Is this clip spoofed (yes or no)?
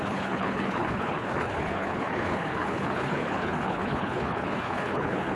yes